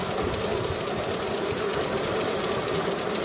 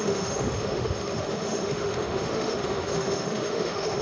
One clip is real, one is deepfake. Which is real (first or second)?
first